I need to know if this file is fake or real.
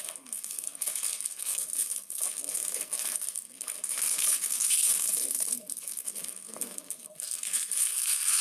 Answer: fake